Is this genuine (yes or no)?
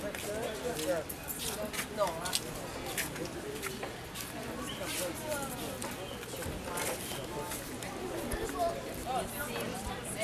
yes